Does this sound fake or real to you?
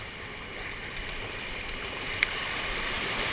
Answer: real